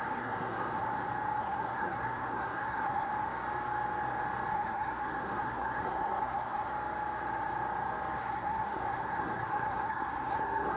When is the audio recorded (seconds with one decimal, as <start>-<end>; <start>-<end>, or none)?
0.9-1.4; 3.1-4.5; 6.7-8.2